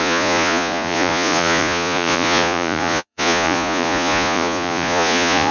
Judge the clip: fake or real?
fake